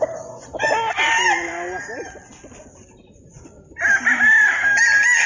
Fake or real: real